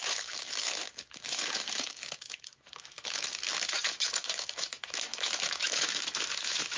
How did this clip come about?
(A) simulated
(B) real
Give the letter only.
A